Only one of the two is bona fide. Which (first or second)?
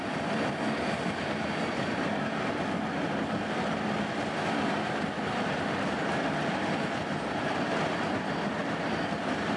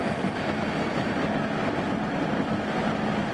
second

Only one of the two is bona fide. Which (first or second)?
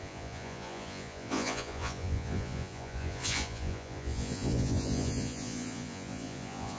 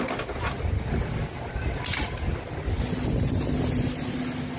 second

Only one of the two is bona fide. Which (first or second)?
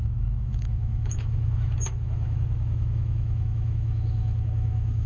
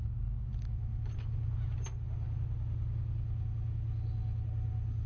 second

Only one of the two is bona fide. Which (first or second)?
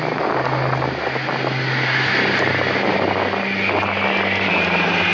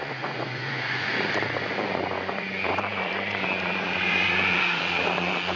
first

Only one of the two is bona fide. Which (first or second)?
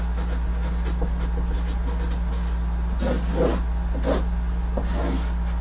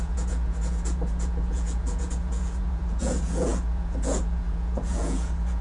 first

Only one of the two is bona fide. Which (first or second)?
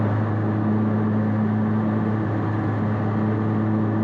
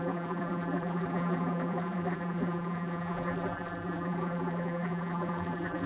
first